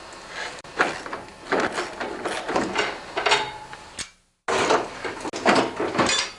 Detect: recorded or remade recorded